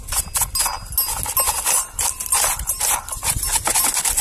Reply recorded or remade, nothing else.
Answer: recorded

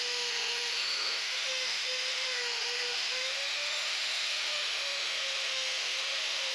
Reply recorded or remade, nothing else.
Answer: remade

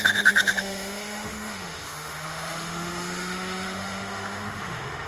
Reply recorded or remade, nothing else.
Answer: remade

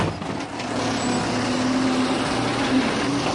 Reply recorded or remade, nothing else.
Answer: recorded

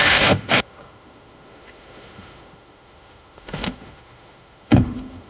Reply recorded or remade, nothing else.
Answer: remade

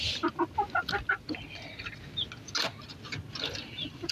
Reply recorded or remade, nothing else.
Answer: recorded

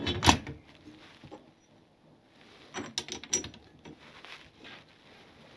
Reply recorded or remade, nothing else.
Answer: recorded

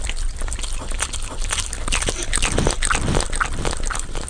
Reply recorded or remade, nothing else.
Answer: recorded